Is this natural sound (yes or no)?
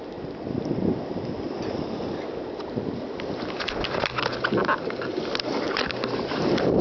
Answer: yes